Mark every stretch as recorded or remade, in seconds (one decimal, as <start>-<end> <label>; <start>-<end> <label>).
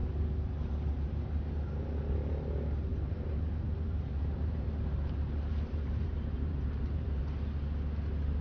0.0-2.9 recorded; 2.9-7.2 remade; 7.2-8.4 recorded